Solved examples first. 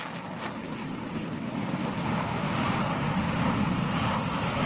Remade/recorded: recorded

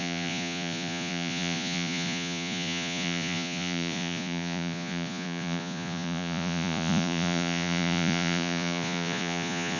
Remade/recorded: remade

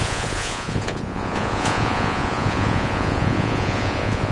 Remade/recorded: remade